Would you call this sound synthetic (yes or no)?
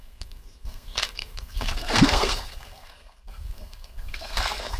yes